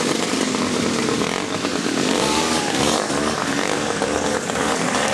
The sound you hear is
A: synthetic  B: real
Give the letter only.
A